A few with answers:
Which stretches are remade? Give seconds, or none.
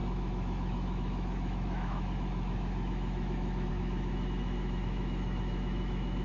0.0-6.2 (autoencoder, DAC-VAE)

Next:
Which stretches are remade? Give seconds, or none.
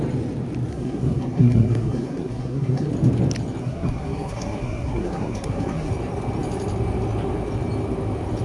0.7-2.9 (codec, SNAC); 3.6-5.9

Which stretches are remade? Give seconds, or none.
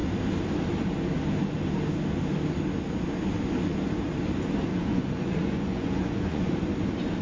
4.7-6.5 (vocoder, Vocos)